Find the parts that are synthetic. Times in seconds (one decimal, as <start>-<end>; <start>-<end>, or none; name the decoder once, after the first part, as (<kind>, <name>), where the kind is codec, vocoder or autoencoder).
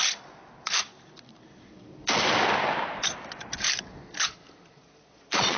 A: 4.7-5.6 (vocoder, Vocos)